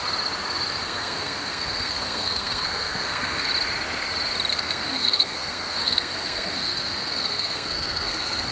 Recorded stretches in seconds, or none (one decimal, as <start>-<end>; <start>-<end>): 0.0-0.8; 3.5-4.5